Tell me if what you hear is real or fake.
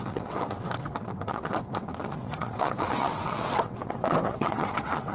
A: fake